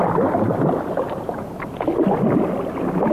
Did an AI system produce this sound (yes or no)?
no